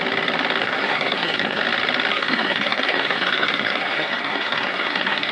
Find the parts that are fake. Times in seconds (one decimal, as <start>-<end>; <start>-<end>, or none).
0.6-1.6; 2.1-5.3